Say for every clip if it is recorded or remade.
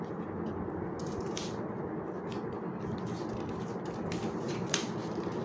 recorded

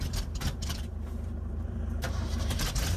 remade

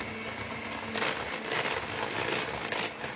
recorded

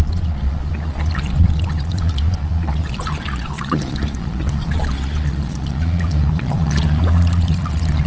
remade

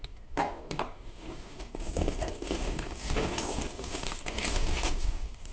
remade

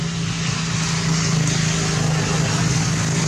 recorded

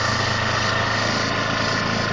recorded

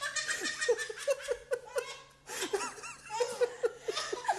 recorded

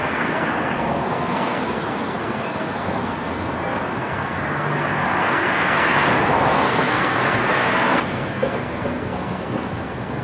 remade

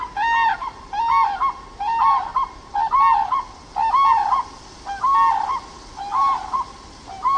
recorded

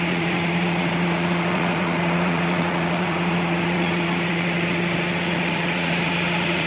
remade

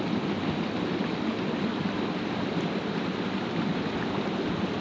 recorded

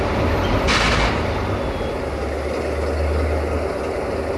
recorded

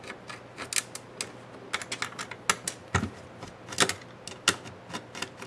recorded